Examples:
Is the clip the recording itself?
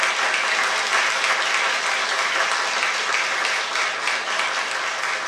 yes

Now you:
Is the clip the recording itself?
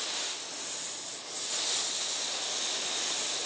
yes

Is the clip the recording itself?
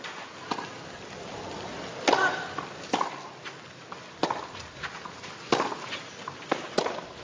yes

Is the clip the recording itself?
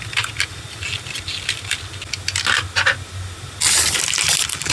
yes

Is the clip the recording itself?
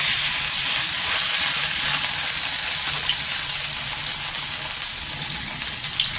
yes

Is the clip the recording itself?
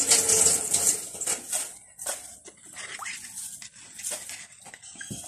yes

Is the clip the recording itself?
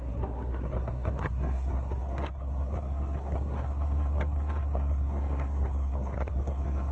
no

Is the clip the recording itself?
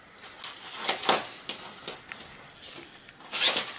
yes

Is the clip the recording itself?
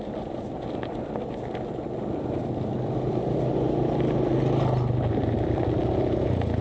yes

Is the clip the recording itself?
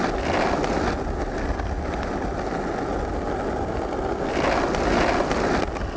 yes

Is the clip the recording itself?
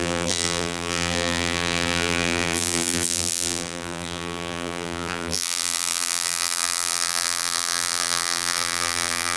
no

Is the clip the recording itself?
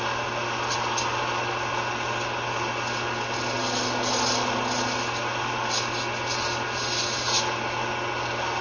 yes